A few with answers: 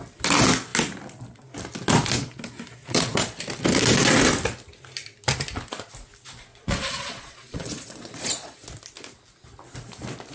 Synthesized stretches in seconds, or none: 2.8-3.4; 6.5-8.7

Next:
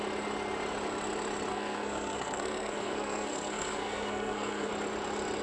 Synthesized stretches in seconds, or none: 1.5-4.7